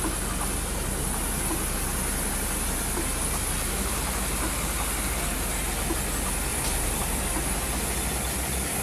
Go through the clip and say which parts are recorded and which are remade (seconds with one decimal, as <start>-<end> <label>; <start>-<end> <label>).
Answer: 0.0-6.5 recorded; 6.5-7.2 remade; 7.2-8.8 recorded